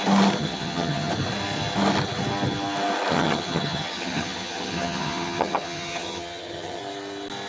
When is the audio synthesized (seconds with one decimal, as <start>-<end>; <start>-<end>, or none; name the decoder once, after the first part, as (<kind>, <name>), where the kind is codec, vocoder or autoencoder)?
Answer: 0.4-1.1 (vocoder, HiFi-GAN); 3.1-6.8